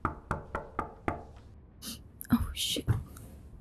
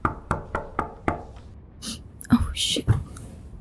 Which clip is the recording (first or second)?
first